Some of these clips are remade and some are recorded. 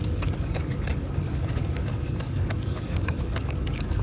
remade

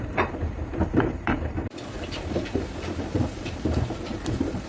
remade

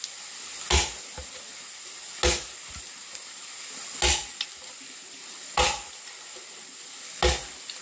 recorded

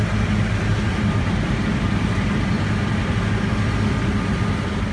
recorded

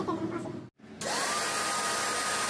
recorded